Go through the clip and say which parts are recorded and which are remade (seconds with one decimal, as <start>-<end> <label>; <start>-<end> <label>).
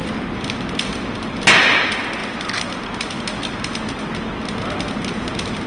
0.0-5.7 recorded